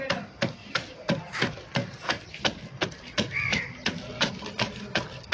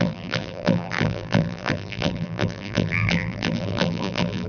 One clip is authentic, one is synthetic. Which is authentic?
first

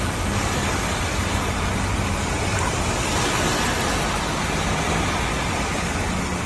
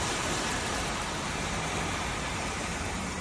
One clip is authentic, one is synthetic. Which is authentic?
first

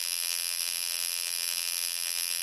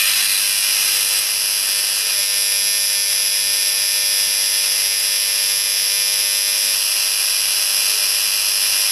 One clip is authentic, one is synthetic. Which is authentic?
second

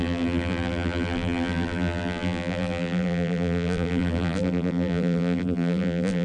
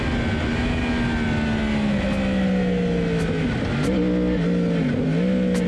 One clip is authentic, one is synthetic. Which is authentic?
second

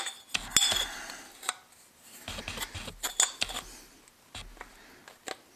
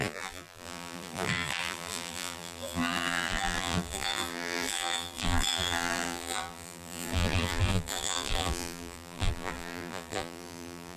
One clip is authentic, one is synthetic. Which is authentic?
first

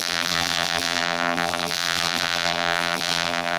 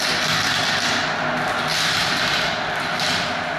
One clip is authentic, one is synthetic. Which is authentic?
second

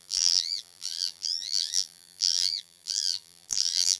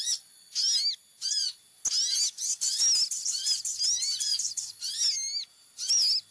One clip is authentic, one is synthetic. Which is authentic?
second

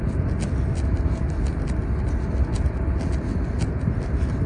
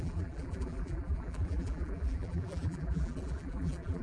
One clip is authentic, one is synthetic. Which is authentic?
first